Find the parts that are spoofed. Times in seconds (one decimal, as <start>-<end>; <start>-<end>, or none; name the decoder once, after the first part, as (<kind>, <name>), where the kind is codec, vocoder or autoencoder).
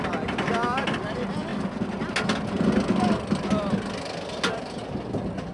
none